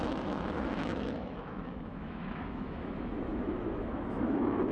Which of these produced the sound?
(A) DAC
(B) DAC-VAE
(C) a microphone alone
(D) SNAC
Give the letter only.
B